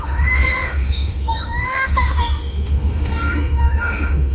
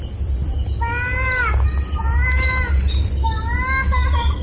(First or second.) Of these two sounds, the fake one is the first